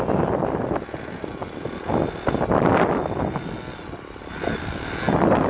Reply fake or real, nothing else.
real